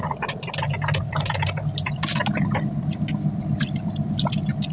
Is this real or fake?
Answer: real